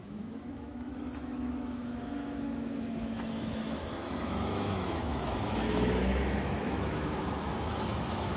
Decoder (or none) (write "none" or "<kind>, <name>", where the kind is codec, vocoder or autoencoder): autoencoder, DAC-VAE